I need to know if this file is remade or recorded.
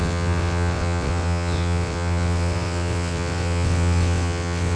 remade